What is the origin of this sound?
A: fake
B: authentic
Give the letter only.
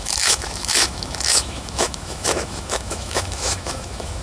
A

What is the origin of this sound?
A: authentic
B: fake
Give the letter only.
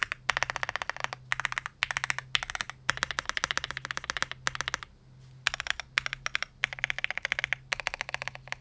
A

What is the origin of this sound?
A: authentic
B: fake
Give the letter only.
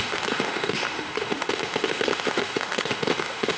B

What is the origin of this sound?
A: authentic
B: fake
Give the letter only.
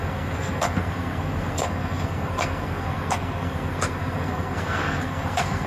B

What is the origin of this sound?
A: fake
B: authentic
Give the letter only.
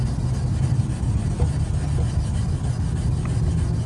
B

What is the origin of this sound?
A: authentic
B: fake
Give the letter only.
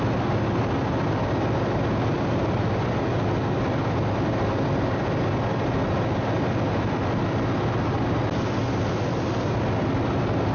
A